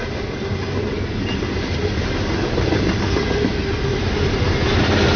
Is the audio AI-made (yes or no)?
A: no